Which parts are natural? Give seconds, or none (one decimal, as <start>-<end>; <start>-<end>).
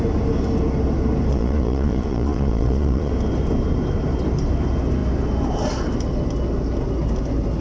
0.0-1.3; 3.1-7.6